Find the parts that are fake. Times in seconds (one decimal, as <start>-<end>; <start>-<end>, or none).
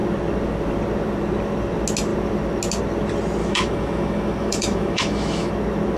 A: 3.4-5.5